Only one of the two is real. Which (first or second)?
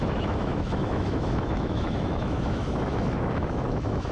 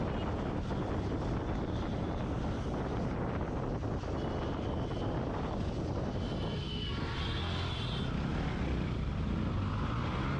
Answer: second